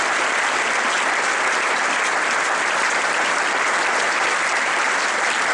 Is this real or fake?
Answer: real